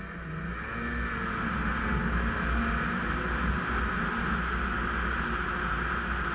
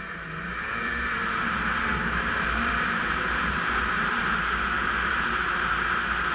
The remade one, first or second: second